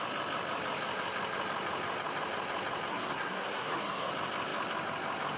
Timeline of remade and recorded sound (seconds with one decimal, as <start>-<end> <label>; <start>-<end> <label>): 0.0-2.9 recorded; 2.9-4.1 remade; 4.1-5.4 recorded